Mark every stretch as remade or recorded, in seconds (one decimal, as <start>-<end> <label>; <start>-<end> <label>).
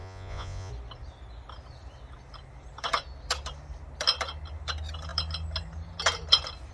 0.0-0.7 remade; 0.7-6.7 recorded